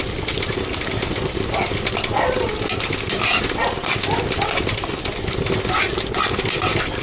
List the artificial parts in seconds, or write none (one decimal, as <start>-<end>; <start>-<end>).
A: none